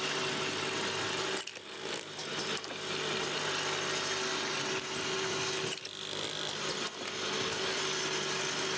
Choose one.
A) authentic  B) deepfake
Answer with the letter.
A